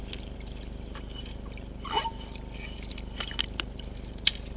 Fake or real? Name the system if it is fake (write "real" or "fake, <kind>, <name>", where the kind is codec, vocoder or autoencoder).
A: real